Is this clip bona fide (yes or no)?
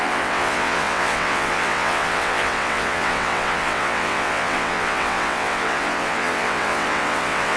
no